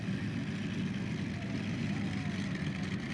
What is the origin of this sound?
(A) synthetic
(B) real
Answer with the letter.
B